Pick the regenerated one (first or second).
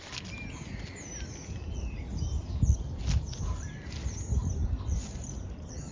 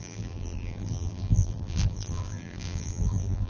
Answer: second